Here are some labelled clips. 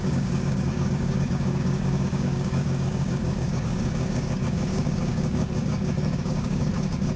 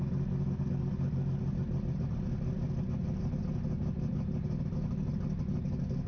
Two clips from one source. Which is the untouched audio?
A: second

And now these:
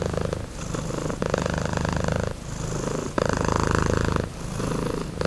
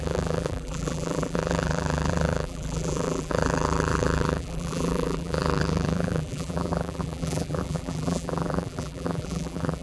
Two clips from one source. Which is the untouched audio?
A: first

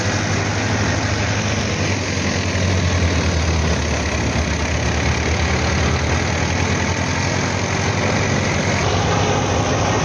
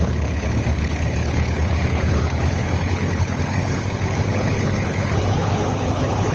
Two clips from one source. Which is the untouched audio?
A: first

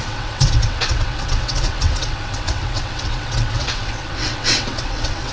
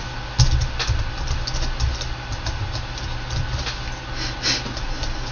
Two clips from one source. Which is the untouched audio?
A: second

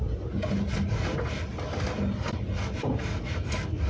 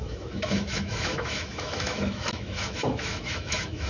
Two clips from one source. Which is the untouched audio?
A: first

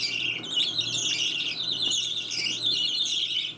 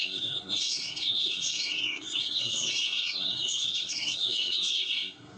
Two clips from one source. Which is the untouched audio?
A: first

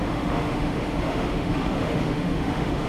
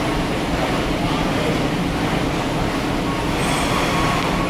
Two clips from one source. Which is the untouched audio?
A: second